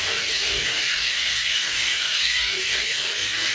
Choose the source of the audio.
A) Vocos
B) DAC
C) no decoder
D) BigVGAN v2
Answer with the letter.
B